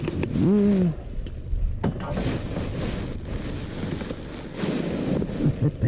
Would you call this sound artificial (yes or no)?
no